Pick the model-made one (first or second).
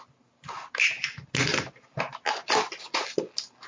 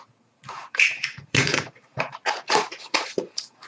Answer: second